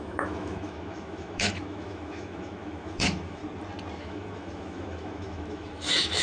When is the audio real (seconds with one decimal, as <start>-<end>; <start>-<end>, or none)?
3.4-4.0